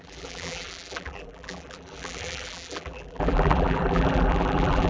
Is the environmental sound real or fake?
fake